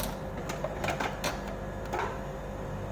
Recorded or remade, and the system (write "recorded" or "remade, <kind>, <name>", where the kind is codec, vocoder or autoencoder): recorded